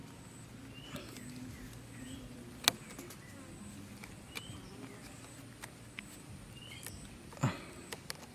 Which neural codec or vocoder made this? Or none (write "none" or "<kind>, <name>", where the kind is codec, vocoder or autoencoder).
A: none